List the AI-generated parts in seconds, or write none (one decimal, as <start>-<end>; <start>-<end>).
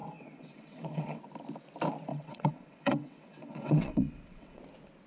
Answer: 0.0-1.2; 2.1-4.6